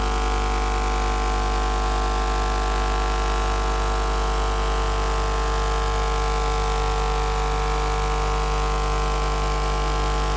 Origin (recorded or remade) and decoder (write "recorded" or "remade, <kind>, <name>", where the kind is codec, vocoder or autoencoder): recorded